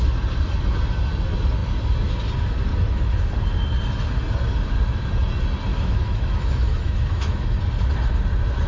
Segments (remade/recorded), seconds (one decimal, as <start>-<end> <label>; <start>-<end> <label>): 0.0-2.7 recorded; 2.7-3.3 remade; 3.3-5.7 recorded; 5.7-7.6 remade; 7.6-8.7 recorded

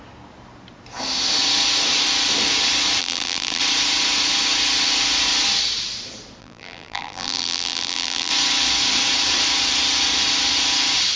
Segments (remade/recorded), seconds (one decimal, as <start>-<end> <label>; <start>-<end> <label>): 0.0-3.0 recorded; 3.0-3.6 remade; 3.6-6.4 recorded; 6.4-8.3 remade; 8.3-11.2 recorded

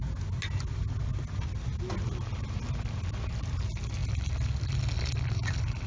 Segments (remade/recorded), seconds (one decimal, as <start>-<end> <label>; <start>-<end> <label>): 0.0-5.9 recorded

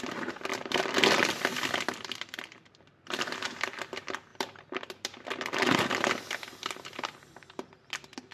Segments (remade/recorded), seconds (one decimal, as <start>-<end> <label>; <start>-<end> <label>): 0.0-0.5 recorded; 0.5-3.8 remade; 3.8-8.3 recorded

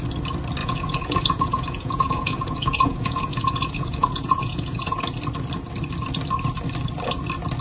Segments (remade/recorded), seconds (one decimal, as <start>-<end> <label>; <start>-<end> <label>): 0.0-0.6 recorded; 0.6-5.0 remade; 5.0-7.6 recorded